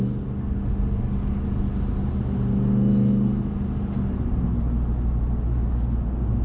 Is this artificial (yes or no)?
no